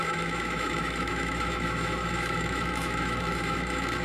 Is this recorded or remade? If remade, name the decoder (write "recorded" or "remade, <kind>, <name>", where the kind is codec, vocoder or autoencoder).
remade, autoencoder, DAC-VAE